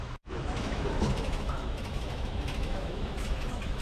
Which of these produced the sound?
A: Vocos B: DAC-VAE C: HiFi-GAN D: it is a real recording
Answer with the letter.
B